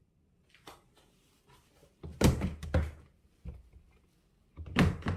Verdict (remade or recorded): recorded